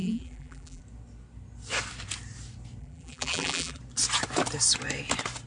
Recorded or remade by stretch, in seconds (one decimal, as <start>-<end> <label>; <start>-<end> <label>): 0.0-0.8 remade; 0.8-2.8 recorded; 2.8-3.8 remade; 3.8-5.5 recorded